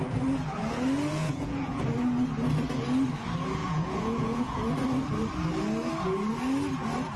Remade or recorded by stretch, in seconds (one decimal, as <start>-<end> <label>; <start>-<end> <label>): 0.0-1.2 recorded; 1.2-1.8 remade; 1.8-3.6 recorded; 3.6-4.7 remade; 4.7-7.2 recorded